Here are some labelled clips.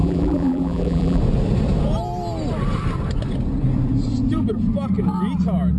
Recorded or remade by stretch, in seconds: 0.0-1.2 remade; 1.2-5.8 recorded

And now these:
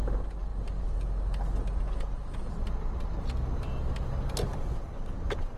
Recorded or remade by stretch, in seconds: 0.0-4.5 recorded; 4.5-5.6 remade

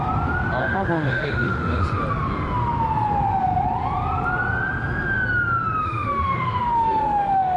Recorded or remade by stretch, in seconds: 0.0-0.6 recorded; 0.6-2.0 remade; 2.0-5.8 recorded; 5.8-7.6 remade

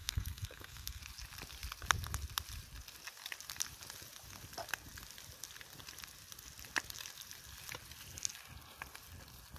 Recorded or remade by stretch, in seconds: 0.0-1.0 remade; 1.0-9.6 recorded

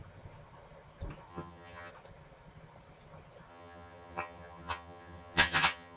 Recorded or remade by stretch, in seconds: 0.0-1.3 recorded; 1.3-1.9 remade; 1.9-3.5 recorded; 3.5-6.0 remade

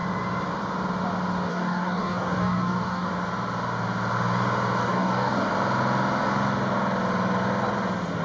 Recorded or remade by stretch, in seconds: 0.0-1.5 recorded; 1.5-3.1 remade; 3.1-4.8 recorded; 4.8-5.5 remade; 5.5-8.2 recorded

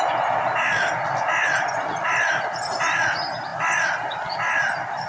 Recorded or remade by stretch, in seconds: 0.0-5.1 recorded

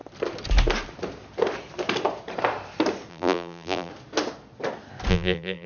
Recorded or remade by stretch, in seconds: 0.0-3.1 recorded; 3.1-3.9 remade; 3.9-5.1 recorded; 5.1-5.7 remade